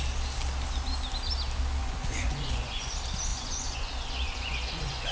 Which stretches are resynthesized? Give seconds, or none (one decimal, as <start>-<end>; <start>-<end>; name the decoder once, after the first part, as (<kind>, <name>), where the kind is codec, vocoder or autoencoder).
1.8-2.9 (vocoder, Vocos); 3.3-5.1

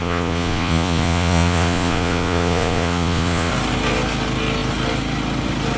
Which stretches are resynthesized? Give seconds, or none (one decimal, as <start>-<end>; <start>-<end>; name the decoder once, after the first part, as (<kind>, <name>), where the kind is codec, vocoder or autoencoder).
0.0-3.5 (vocoder, Vocos)